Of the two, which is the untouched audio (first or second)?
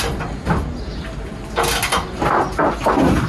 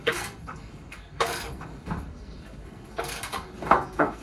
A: first